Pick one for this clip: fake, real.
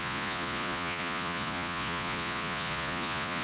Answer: fake